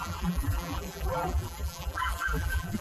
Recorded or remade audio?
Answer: remade